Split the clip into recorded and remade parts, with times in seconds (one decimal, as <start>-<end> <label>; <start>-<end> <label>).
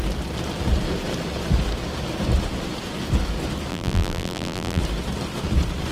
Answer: 0.0-3.7 recorded; 3.7-4.8 remade; 4.8-5.9 recorded